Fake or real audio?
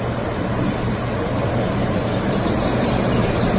real